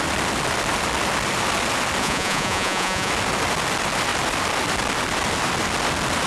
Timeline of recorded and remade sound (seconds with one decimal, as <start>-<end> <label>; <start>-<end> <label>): 0.0-2.0 recorded; 2.0-3.1 remade; 3.1-6.3 recorded